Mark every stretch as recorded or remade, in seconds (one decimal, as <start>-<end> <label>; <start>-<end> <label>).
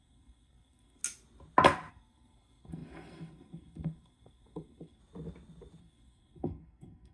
0.0-1.0 remade; 1.0-1.9 recorded; 1.9-5.0 remade; 5.0-5.8 recorded; 5.8-7.1 remade